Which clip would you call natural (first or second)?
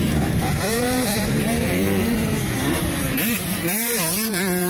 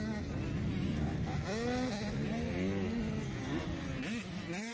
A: second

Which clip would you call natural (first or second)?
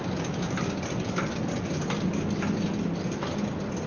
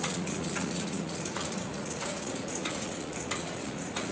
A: first